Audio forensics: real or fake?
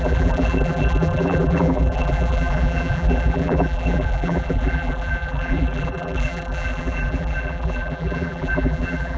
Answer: fake